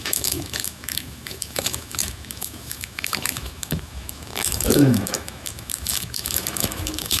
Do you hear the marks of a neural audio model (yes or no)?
yes